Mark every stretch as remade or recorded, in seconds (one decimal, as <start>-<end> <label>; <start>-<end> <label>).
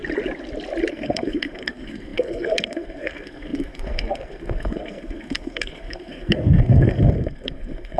0.0-0.9 recorded; 0.9-8.0 remade